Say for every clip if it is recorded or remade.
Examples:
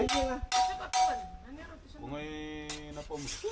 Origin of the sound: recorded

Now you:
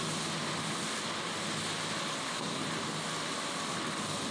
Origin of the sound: recorded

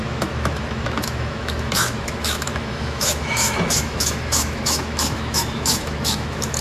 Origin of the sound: remade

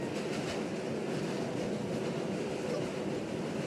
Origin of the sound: recorded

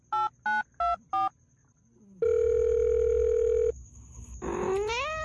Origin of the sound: recorded